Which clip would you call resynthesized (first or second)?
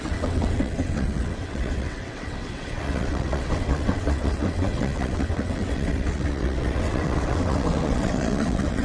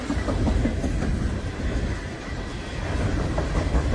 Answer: first